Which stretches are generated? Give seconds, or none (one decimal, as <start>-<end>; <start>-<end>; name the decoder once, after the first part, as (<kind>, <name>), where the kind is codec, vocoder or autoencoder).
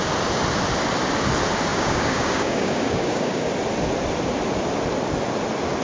1.7-3.5 (codec, DAC)